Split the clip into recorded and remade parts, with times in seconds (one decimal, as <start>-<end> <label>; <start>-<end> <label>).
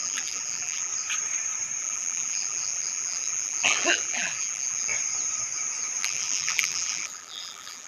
0.0-0.9 remade; 0.9-1.8 recorded; 1.8-4.9 remade; 4.9-6.0 recorded; 6.0-7.9 remade